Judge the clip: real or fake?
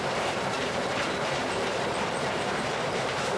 fake